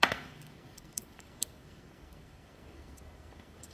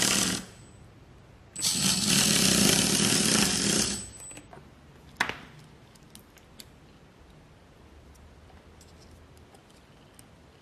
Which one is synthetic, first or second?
first